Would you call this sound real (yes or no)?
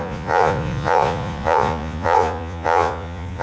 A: no